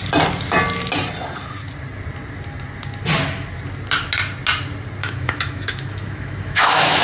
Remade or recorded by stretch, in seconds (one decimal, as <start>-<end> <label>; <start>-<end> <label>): 0.0-5.0 recorded; 5.0-7.0 remade